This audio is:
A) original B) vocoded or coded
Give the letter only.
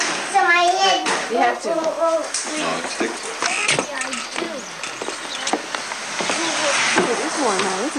A